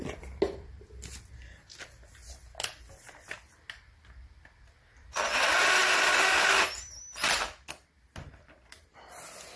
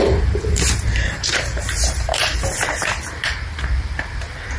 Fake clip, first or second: second